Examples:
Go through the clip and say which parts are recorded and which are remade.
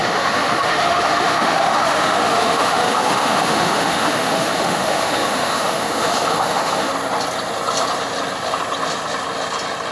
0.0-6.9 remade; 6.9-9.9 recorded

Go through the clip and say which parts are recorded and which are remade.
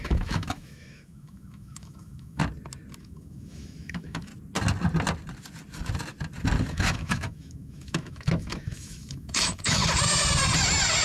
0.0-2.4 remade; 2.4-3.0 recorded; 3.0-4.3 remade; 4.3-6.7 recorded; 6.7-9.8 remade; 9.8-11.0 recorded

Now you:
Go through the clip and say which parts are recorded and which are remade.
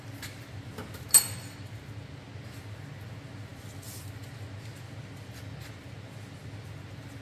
0.0-7.2 recorded